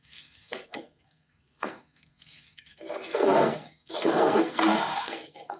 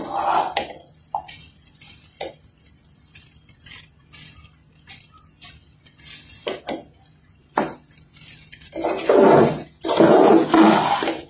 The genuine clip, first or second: second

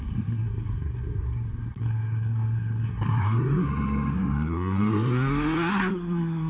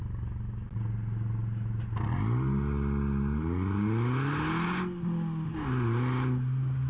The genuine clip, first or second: second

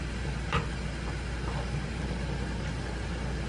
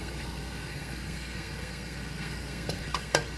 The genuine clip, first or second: first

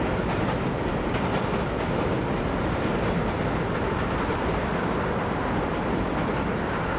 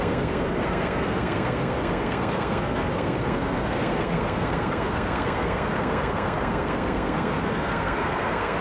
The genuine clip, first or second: first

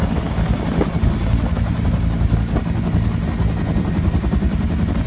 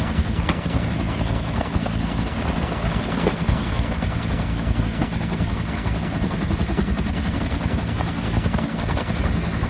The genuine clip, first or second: first